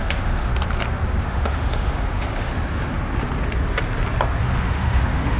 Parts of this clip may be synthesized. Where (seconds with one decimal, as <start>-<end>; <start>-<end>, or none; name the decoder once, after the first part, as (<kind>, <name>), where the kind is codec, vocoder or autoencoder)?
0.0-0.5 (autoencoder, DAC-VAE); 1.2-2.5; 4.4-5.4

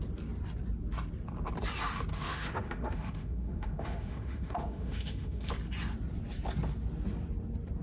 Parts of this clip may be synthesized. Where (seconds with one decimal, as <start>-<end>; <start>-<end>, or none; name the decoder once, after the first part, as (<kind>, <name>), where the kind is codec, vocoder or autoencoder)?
2.1-5.5 (autoencoder, DAC-VAE)

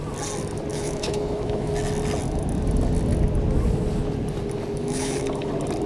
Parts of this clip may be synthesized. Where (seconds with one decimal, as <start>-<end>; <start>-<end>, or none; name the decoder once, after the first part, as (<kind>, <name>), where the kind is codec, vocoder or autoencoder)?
0.7-1.7 (autoencoder, DAC-VAE); 4.8-5.5

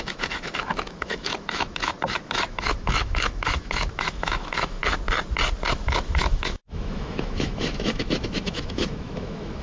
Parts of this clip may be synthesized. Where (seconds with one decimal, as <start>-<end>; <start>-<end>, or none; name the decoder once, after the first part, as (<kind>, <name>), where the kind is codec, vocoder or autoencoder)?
0.0-4.8 (autoencoder, DAC-VAE); 5.7-9.6